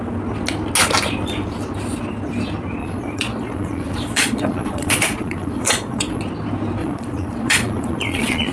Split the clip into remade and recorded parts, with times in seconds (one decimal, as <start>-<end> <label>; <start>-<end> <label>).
0.0-2.8 recorded; 2.8-6.2 remade; 6.2-6.8 recorded; 6.8-8.5 remade